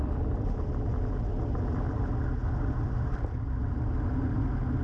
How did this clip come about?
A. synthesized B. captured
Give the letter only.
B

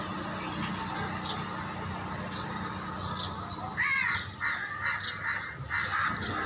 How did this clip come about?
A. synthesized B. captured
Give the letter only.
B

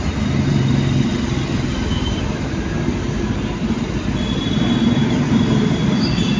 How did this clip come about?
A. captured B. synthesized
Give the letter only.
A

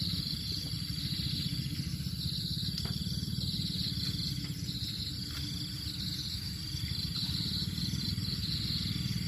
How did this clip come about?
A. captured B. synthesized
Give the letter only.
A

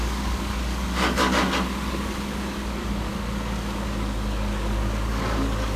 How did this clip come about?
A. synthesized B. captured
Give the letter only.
A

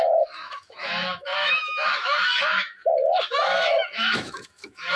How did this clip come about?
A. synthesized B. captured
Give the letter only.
A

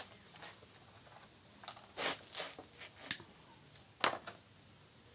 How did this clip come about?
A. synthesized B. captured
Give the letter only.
B